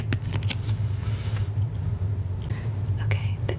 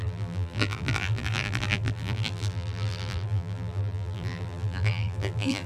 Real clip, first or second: first